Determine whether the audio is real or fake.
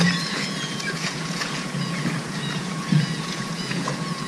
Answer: fake